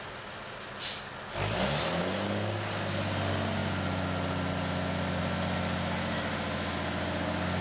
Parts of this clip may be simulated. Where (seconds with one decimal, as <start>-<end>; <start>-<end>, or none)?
none